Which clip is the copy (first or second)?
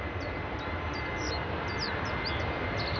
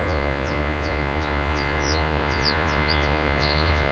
second